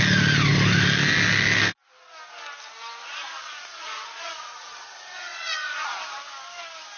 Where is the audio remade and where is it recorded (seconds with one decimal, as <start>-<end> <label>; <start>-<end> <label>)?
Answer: 0.0-3.2 recorded; 3.2-5.8 remade; 5.8-7.0 recorded